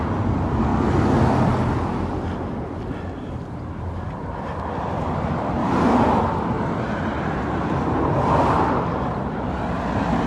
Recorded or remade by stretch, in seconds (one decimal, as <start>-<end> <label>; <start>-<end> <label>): 0.0-10.3 recorded